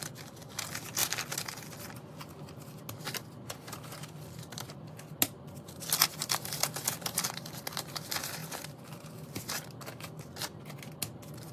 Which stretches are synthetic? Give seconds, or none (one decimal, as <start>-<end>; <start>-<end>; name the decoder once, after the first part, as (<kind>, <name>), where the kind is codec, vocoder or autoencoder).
8.4-9.4 (vocoder, BigVGAN v2)